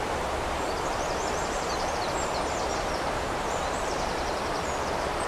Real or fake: fake